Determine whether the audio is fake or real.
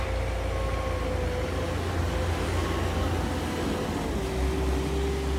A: real